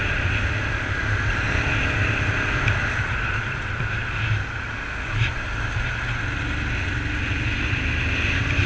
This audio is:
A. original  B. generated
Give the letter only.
A